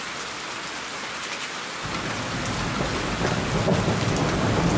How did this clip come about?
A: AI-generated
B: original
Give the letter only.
B